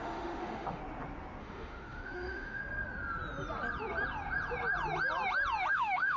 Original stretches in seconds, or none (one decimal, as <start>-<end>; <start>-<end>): 0.8-1.4; 2.6-5.7